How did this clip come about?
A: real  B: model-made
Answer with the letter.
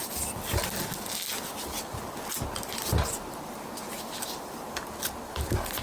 A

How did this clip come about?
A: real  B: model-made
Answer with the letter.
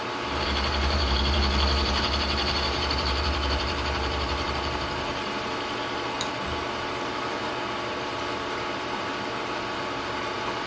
B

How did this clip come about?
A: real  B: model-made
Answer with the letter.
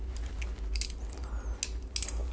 A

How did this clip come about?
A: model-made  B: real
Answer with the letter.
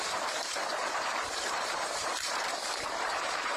A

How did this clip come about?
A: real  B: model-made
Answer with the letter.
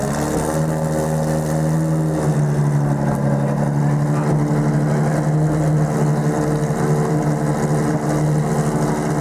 A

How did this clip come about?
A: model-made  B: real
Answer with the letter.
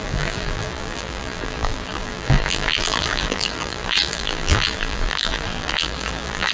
A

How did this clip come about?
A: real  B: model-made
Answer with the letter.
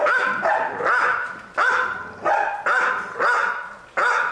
A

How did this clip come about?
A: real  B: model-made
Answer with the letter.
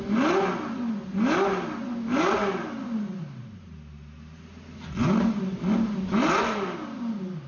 A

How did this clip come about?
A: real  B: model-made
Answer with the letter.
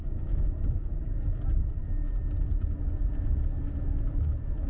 A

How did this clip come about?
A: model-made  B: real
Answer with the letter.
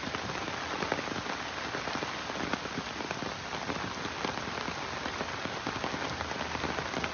B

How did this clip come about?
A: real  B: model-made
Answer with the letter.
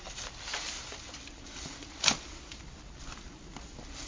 A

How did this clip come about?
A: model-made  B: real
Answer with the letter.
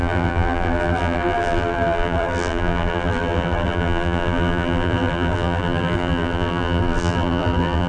A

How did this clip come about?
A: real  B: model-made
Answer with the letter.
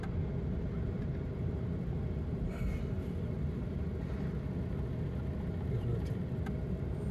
A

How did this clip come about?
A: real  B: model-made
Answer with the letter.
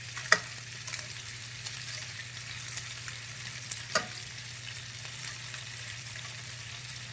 B